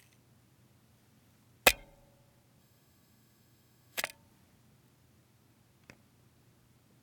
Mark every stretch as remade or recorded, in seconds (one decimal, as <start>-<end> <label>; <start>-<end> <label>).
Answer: 0.0-2.6 recorded; 2.6-4.0 remade; 4.0-7.0 recorded